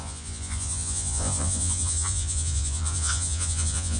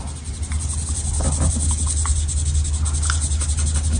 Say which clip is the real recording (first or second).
second